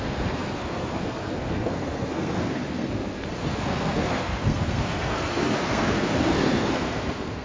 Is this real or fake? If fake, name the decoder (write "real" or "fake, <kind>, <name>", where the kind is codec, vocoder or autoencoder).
fake, codec, SNAC